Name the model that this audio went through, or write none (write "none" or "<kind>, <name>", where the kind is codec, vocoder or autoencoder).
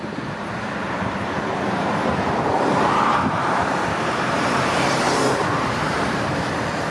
vocoder, BigVGAN v2